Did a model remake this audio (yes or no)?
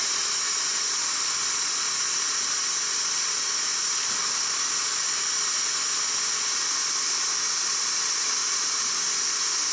no